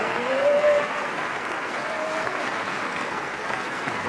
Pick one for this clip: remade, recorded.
remade